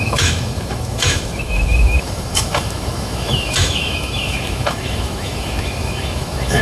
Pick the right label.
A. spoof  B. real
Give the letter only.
A